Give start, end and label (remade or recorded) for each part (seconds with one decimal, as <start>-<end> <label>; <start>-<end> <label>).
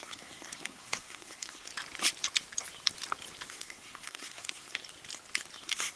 0.0-1.7 remade; 1.7-3.5 recorded; 3.5-4.8 remade; 4.8-5.6 recorded; 5.6-6.0 remade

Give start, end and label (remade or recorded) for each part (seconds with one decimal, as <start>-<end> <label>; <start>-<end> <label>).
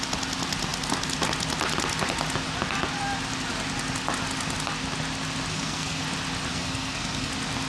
0.0-5.5 recorded; 5.5-6.0 remade; 6.0-6.5 recorded; 6.5-7.3 remade; 7.3-7.7 recorded